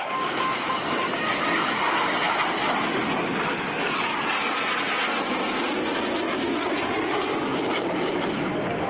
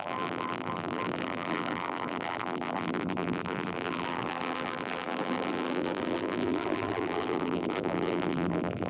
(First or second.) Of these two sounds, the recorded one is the first